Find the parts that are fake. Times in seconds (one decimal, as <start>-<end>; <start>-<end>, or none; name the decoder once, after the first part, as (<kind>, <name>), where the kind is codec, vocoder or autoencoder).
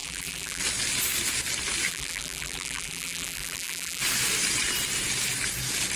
0.0-0.6 (vocoder, BigVGAN v2); 1.9-4.0